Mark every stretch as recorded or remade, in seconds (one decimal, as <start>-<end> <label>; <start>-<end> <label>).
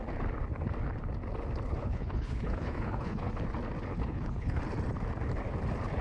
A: 0.0-1.8 recorded; 1.8-3.3 remade; 3.3-3.9 recorded; 3.9-4.6 remade; 4.6-6.0 recorded